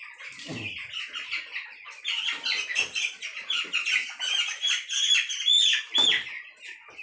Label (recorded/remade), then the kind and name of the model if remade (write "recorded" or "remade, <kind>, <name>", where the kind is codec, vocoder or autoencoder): recorded